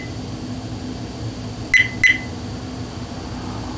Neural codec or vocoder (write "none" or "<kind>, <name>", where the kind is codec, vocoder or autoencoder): none